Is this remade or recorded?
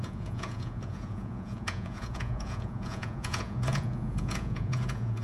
remade